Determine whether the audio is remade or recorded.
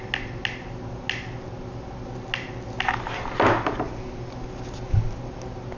recorded